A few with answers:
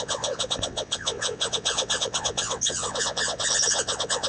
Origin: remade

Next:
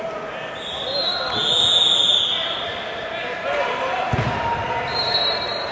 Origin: recorded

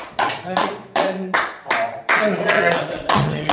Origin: remade